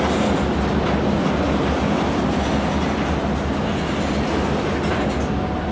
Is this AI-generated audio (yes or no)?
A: no